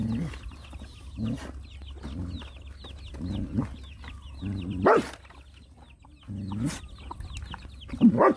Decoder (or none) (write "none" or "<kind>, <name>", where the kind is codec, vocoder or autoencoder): none